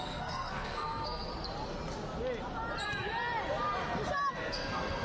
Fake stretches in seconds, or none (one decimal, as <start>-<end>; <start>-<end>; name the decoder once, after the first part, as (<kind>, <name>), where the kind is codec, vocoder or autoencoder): 0.0-1.3 (codec, SNAC); 4.3-5.0